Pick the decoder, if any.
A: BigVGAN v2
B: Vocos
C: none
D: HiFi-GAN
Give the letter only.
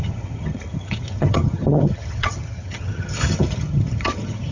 D